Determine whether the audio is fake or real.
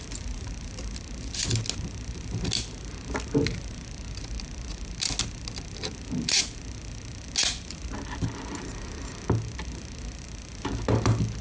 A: real